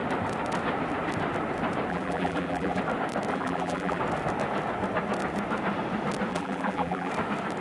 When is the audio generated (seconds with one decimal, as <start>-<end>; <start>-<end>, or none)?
1.9-2.8; 3.3-4.0; 6.3-7.1